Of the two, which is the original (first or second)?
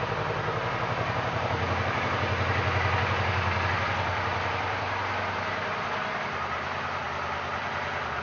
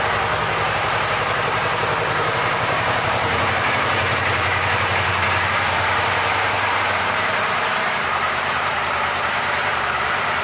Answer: first